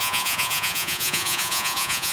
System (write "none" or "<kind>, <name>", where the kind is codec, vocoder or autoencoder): vocoder, Vocos